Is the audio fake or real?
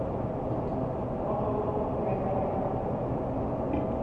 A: real